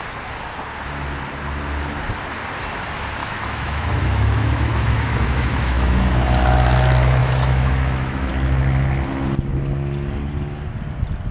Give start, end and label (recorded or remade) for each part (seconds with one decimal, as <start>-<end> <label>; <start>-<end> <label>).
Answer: 0.0-3.2 recorded; 3.2-6.0 remade; 6.0-7.2 recorded; 7.2-8.3 remade; 8.3-11.3 recorded